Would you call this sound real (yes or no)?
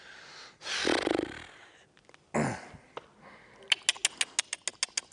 yes